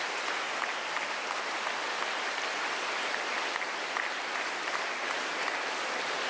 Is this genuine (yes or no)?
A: yes